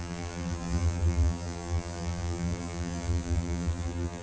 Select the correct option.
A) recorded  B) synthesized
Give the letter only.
B